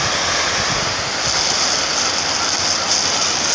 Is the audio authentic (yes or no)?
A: yes